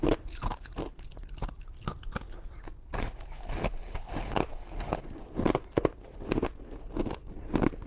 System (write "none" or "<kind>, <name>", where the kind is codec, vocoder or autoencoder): none